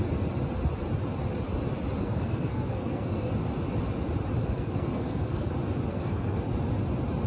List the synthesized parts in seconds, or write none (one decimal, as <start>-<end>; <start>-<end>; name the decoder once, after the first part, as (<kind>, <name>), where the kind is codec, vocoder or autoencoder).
2.0-3.3 (codec, SNAC); 4.4-5.5; 5.9-6.4